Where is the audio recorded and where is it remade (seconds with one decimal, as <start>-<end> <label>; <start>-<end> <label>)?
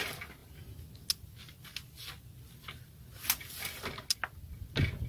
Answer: 0.0-5.1 recorded